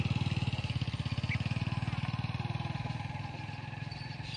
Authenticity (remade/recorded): recorded